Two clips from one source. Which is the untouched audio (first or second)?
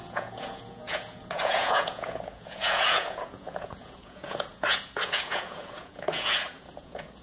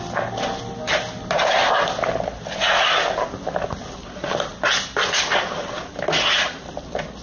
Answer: second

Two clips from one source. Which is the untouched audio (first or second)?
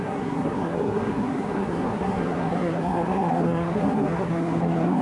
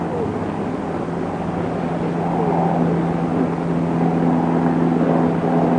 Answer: second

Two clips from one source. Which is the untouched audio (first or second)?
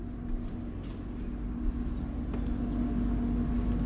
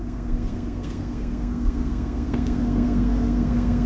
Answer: first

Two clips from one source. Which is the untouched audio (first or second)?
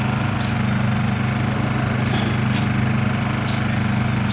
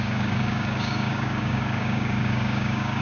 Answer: first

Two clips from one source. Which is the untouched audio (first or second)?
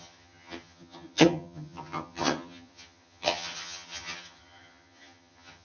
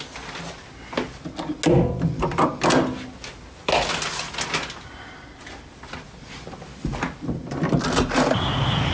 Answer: second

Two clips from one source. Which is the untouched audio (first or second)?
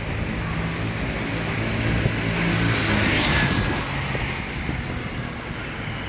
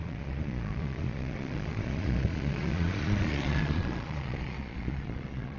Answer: first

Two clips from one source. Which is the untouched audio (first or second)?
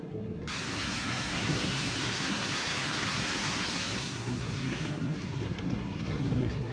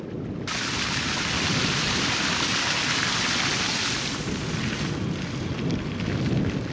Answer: second